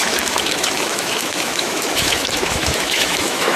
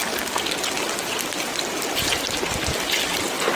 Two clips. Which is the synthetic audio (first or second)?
first